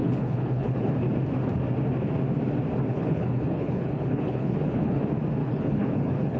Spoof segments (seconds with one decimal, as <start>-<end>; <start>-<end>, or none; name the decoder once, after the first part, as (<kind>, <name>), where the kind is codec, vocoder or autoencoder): 0.0-0.9 (codec, HILCodec); 2.9-5.0; 5.4-6.4